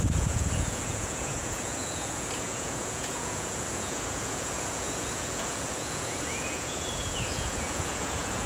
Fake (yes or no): yes